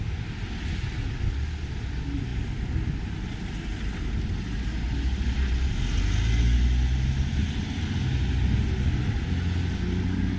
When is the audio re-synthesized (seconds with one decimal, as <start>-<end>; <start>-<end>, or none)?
none